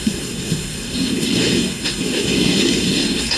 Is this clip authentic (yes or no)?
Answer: no